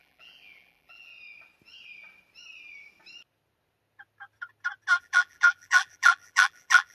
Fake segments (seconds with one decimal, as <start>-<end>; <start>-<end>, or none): 0.0-1.1; 5.0-6.9